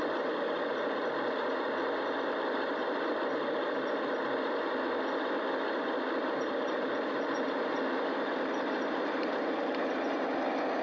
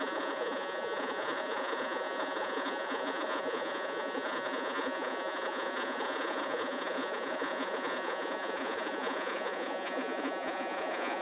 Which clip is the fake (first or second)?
second